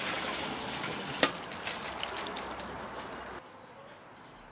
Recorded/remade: recorded